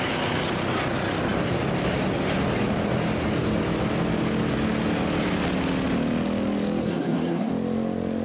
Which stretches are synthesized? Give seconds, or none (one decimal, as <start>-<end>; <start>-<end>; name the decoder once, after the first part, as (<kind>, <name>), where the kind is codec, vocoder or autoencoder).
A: 6.8-7.5 (codec, SNAC)